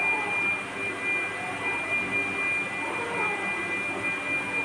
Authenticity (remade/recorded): recorded